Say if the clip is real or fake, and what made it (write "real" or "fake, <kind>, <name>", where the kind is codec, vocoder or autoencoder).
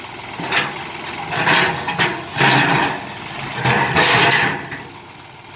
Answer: real